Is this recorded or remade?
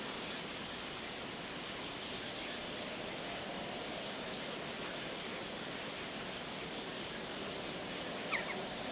recorded